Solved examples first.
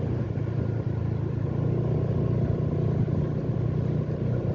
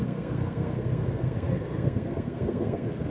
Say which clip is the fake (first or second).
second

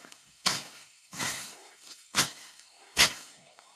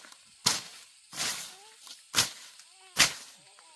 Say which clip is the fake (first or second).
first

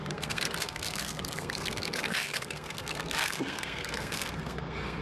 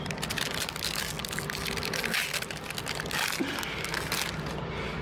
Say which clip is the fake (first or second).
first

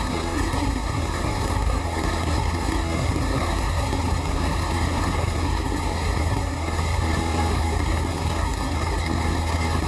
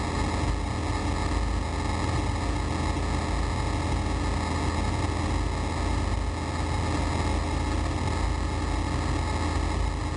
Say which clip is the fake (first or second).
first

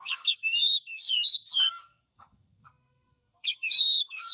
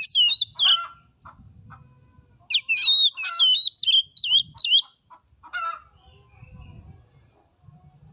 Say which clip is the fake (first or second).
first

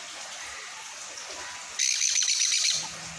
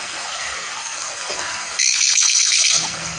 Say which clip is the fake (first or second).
second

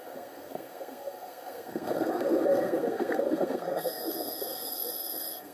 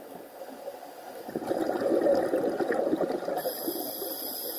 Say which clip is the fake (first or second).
first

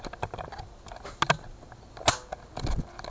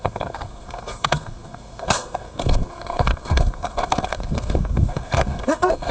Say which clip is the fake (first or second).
second